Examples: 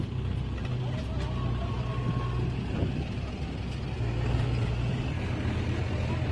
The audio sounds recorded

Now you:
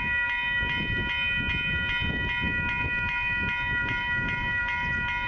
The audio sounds recorded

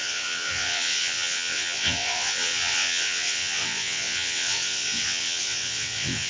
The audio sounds remade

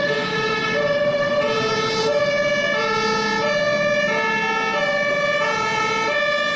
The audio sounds recorded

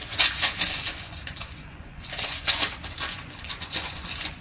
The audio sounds remade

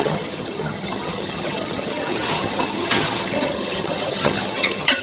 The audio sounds remade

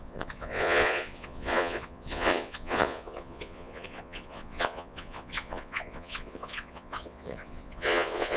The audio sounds remade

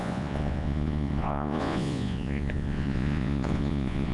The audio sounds remade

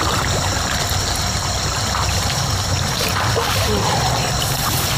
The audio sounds recorded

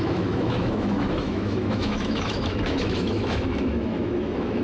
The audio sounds remade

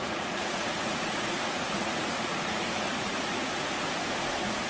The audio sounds remade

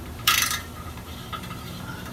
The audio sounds remade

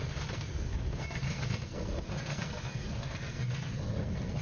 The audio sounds remade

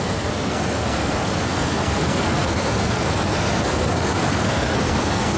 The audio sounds remade